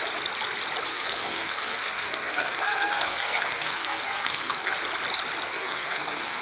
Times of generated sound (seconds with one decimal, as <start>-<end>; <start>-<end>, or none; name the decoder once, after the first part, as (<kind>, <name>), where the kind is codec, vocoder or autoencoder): 0.9-4.7 (codec, SNAC); 5.5-6.4

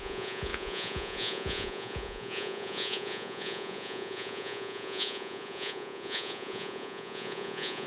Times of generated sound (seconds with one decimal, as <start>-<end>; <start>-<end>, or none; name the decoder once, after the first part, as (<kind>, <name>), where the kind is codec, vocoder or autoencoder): 0.0-7.9 (vocoder, Vocos)

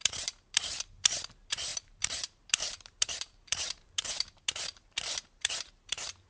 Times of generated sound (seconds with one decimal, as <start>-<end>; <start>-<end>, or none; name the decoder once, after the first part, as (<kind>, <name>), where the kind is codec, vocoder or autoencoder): 0.0-6.3 (vocoder, BigVGAN v2)

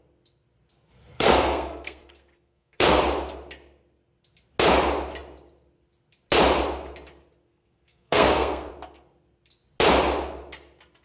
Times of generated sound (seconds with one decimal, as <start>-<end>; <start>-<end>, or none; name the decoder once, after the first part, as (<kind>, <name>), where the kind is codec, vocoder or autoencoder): 0.7-3.0 (codec, SNAC); 7.5-8.7